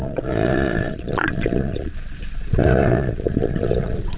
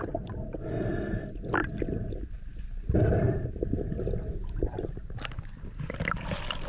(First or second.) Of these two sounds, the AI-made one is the first